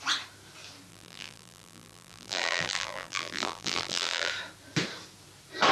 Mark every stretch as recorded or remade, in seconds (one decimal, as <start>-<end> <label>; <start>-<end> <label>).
0.0-0.9 recorded; 0.9-4.3 remade; 4.3-5.7 recorded